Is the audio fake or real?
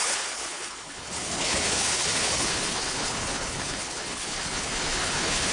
fake